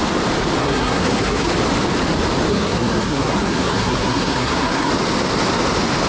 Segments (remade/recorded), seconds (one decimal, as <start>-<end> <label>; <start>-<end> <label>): 0.0-0.6 recorded; 0.6-1.5 remade; 1.5-2.5 recorded; 2.5-4.9 remade; 4.9-6.1 recorded